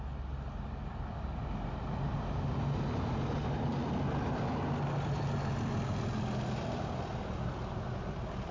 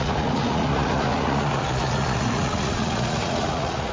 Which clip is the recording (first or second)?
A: first